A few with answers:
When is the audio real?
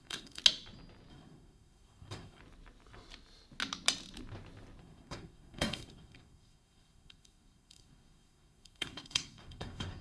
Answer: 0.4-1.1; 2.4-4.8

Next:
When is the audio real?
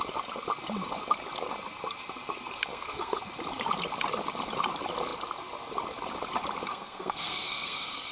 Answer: 0.0-2.7; 3.2-6.7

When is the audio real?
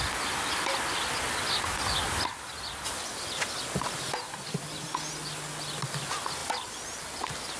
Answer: 0.0-7.6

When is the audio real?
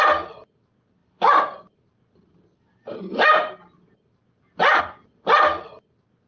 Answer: 0.0-1.0; 4.8-6.3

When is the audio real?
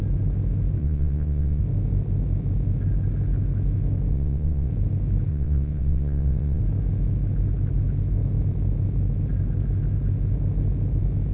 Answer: 0.0-0.8; 1.6-4.1; 4.7-5.3; 6.6-11.3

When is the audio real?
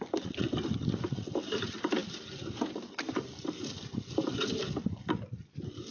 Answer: 0.0-5.9